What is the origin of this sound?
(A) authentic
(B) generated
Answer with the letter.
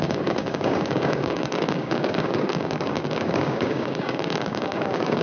B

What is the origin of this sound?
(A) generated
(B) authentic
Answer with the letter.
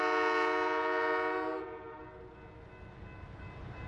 B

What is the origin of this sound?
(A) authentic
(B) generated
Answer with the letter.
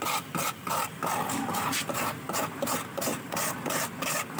A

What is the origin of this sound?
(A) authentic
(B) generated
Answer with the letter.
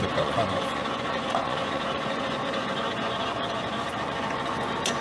B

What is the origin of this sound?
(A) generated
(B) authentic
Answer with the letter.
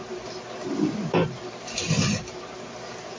A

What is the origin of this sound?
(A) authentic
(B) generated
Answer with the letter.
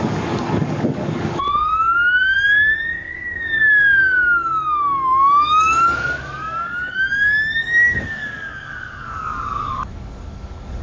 B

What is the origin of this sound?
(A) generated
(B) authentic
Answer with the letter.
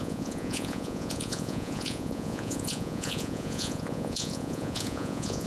A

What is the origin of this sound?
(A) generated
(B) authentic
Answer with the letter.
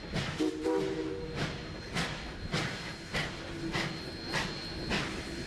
B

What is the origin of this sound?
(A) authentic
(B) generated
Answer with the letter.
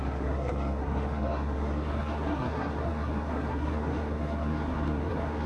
B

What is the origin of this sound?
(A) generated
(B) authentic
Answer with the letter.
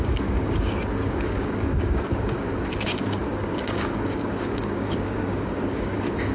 A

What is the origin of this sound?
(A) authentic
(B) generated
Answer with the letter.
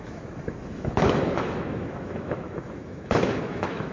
B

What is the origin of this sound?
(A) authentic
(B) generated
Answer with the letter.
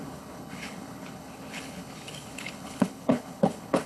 B